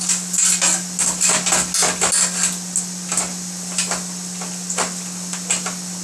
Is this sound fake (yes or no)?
no